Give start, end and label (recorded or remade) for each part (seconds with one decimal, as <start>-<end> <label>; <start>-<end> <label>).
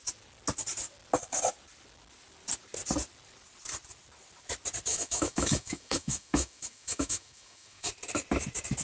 0.0-4.9 recorded; 4.9-7.9 remade; 7.9-8.8 recorded